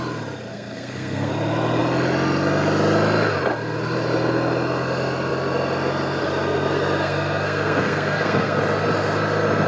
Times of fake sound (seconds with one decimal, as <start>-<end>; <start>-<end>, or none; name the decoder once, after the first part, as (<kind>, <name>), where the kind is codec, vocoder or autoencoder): 0.5-1.3 (codec, SNAC); 6.2-8.6

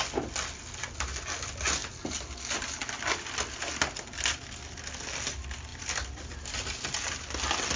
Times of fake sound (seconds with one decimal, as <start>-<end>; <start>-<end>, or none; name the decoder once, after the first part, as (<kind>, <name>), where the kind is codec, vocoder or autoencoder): none